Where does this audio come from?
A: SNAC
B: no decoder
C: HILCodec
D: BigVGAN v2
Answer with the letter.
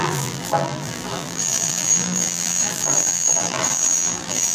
D